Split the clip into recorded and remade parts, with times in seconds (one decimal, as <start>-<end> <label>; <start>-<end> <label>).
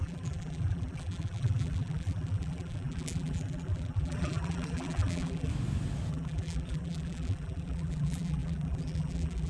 0.0-5.5 remade; 5.5-6.1 recorded; 6.1-9.5 remade